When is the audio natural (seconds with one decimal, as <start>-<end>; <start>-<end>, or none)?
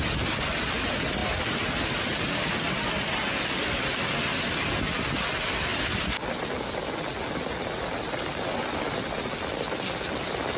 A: 0.0-10.6